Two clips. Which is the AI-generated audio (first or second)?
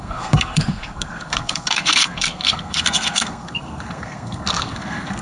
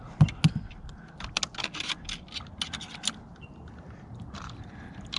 first